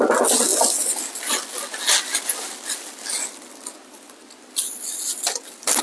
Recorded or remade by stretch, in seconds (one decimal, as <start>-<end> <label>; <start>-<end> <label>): 0.0-5.8 recorded